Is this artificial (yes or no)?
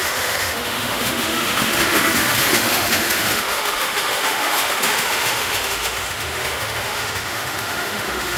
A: yes